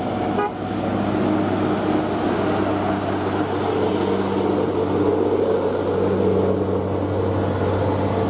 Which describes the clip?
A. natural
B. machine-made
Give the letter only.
A